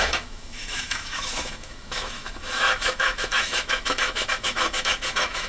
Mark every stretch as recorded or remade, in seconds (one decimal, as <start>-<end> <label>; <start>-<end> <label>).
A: 0.0-5.5 remade